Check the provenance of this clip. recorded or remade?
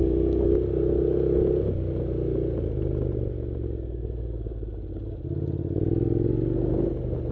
recorded